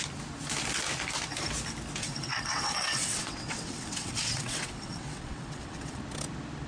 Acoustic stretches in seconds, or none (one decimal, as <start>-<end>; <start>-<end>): 0.0-2.0; 6.0-6.7